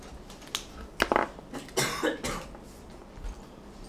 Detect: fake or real real